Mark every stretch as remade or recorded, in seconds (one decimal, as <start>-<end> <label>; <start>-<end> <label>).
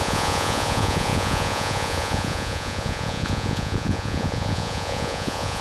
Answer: 0.0-5.6 remade